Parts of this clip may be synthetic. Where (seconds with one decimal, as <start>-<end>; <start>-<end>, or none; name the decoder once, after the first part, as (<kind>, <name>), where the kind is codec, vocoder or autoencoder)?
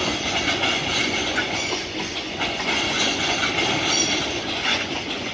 0.0-3.4 (vocoder, Vocos); 4.3-5.3